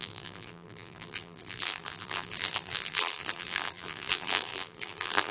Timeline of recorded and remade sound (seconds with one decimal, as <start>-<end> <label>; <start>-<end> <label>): 0.0-5.3 remade